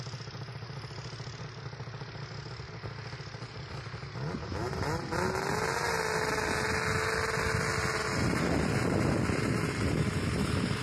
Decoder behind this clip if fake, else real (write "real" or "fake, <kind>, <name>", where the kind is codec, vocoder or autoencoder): real